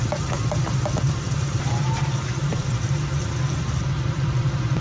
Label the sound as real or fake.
fake